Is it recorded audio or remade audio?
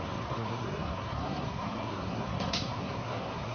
remade